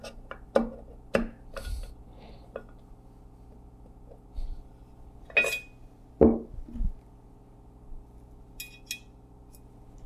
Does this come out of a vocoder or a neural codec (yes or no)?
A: no